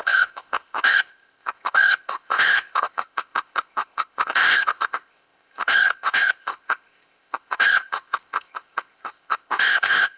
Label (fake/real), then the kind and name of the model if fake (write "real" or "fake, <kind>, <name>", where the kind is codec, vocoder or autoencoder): fake, codec, ZipCodec